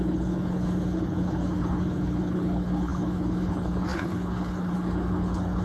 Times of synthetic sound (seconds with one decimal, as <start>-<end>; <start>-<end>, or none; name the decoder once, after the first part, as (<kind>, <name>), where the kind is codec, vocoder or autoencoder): 0.0-5.6 (codec, HILCodec)